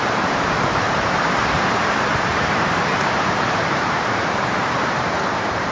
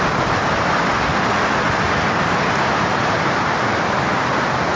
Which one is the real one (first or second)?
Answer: second